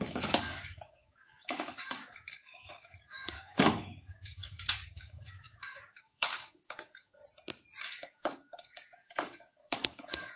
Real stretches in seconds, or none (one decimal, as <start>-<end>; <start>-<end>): 7.2-7.8